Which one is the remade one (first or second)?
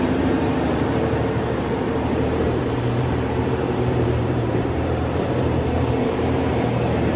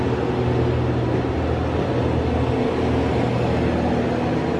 first